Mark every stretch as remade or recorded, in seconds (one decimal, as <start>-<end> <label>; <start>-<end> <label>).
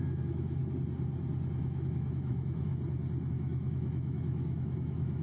0.0-0.6 remade; 0.6-1.6 recorded; 1.6-2.7 remade; 2.7-3.3 recorded; 3.3-5.2 remade